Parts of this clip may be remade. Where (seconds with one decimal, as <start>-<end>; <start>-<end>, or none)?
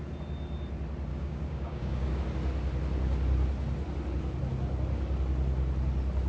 1.1-2.2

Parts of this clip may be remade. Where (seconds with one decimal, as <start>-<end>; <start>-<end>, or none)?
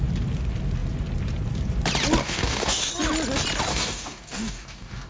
2.2-2.9; 3.7-5.1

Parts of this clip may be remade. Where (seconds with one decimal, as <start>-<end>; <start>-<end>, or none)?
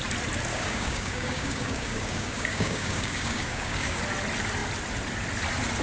0.5-4.0